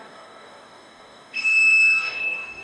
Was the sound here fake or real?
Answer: fake